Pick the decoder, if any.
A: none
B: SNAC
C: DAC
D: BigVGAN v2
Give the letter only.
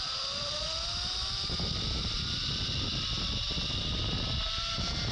D